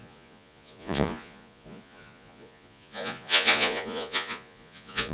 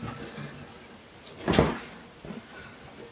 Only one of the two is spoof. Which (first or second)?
first